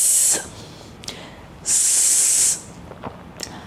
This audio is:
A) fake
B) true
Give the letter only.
B